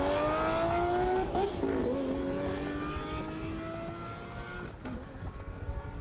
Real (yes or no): yes